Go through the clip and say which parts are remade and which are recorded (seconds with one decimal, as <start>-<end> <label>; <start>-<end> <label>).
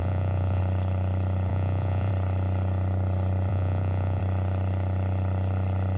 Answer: 0.0-0.6 remade; 0.6-1.5 recorded; 1.5-2.1 remade; 2.1-3.5 recorded; 3.5-4.2 remade; 4.2-6.0 recorded